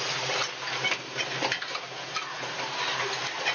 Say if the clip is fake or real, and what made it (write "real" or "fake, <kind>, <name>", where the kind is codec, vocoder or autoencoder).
real